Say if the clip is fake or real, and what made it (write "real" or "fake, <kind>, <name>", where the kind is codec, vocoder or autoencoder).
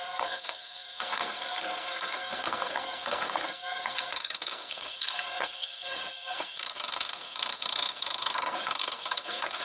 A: fake, codec, SNAC